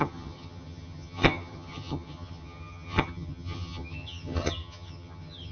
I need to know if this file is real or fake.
fake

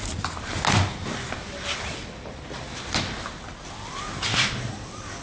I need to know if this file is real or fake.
real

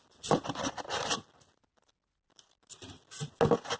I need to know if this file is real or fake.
real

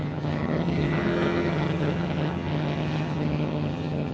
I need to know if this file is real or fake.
fake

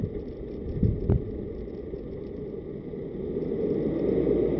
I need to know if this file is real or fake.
real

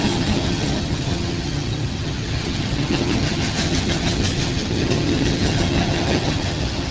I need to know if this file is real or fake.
fake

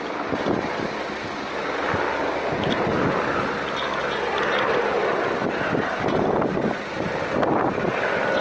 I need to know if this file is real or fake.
real